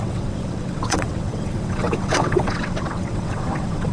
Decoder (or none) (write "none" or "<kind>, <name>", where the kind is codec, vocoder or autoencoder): vocoder, WaveNeXt